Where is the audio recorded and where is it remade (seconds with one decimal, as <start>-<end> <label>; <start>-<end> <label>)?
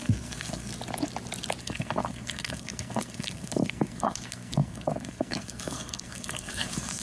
0.0-0.7 remade; 0.7-1.6 recorded; 1.6-7.0 remade